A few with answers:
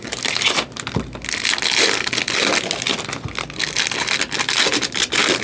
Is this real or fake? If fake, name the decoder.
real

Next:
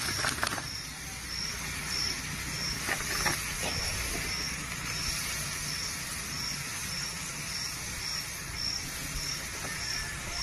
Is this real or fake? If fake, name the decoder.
real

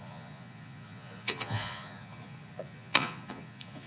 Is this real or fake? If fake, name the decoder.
fake, vocoder, Vocos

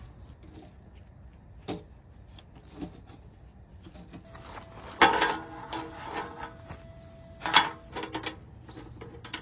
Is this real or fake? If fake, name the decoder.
real